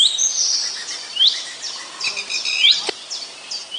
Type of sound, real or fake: real